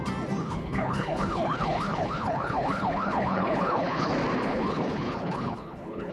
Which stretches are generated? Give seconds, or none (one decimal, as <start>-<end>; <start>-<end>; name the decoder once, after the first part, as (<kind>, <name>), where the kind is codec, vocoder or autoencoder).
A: 0.4-4.1 (codec, HILCodec); 4.5-6.1